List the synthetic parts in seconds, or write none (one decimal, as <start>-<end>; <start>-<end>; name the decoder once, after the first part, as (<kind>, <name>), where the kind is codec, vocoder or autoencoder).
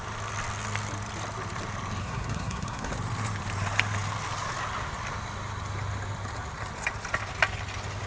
2.0-2.9 (codec, SNAC)